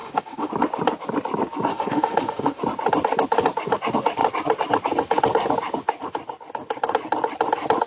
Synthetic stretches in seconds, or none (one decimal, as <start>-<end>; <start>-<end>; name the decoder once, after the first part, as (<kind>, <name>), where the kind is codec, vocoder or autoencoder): 0.0-0.5 (autoencoder, DAC-VAE); 1.7-2.6